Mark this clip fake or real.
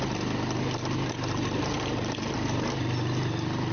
real